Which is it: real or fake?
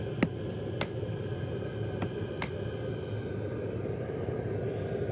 real